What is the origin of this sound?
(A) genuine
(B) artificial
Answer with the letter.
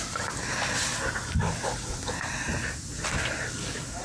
A